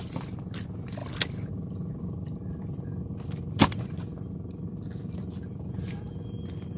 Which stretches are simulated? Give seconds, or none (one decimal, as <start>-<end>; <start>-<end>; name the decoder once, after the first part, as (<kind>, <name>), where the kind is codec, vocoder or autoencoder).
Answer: none

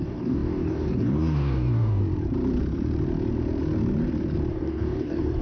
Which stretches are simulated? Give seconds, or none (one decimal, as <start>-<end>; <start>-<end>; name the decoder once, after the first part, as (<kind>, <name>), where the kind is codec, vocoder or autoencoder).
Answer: 0.0-2.0 (codec, DAC); 4.5-5.4

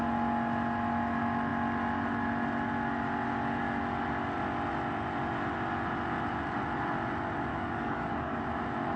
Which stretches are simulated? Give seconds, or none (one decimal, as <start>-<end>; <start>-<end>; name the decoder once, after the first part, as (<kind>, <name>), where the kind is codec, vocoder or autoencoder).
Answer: 7.5-8.4 (codec, DAC)

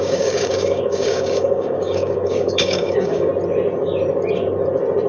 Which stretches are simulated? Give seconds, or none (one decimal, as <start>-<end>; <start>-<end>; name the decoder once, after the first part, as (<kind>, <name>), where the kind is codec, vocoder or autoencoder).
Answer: 0.0-3.3 (codec, DAC)

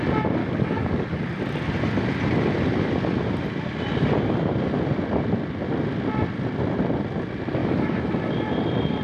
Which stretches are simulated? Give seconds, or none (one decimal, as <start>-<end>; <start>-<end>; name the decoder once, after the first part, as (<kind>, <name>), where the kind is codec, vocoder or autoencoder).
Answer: 0.4-1.2 (codec, DAC); 7.6-8.1

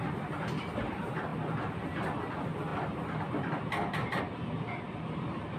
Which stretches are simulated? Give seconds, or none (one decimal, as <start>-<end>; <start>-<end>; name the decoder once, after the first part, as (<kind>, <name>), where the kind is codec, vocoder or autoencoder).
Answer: none

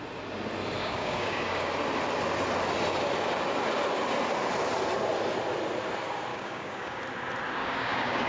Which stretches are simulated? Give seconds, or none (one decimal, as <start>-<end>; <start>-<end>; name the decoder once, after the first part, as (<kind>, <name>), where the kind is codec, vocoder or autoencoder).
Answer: 0.8-1.7 (codec, DAC); 6.3-7.0; 7.6-8.3

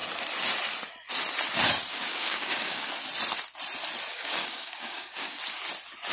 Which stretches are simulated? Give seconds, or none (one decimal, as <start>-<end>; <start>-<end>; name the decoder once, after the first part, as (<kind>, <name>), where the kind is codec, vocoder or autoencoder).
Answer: 1.9-2.9 (codec, DAC); 4.1-5.4